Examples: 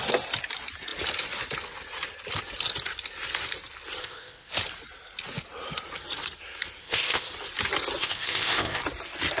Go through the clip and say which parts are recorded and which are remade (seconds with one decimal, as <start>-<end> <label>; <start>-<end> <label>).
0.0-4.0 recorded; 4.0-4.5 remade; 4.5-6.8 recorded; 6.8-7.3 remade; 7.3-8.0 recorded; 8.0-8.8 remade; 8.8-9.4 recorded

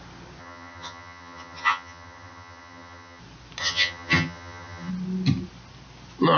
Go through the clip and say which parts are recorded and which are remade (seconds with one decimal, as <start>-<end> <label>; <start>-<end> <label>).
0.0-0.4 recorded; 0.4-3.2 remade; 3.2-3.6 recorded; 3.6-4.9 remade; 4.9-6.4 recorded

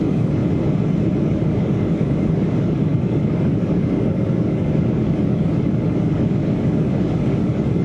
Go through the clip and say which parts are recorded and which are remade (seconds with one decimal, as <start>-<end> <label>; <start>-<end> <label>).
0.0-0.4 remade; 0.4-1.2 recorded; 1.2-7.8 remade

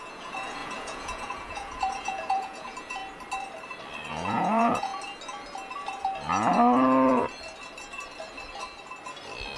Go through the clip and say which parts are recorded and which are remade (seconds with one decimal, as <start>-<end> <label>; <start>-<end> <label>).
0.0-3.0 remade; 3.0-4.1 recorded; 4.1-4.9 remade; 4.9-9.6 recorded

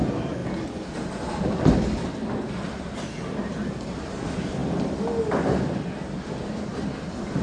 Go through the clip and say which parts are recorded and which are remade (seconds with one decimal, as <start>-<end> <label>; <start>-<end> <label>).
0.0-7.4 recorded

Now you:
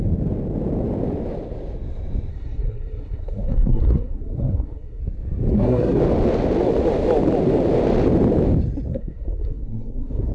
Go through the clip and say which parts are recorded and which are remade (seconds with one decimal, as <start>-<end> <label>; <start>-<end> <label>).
0.0-2.3 recorded; 2.3-5.0 remade; 5.0-5.5 recorded; 5.5-6.0 remade; 6.0-8.9 recorded; 8.9-10.3 remade

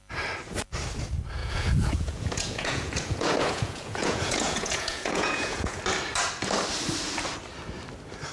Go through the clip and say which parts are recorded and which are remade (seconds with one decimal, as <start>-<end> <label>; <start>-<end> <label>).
0.0-1.4 recorded; 1.4-5.8 remade; 5.8-8.3 recorded